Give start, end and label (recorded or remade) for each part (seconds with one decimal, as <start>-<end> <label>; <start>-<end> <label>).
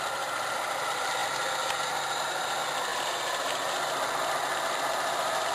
0.0-5.5 recorded